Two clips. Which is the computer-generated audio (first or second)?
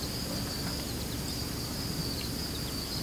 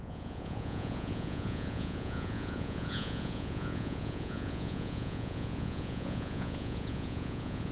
second